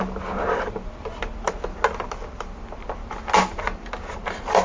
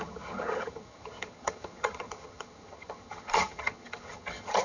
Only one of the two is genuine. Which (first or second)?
first